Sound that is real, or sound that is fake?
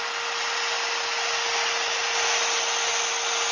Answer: real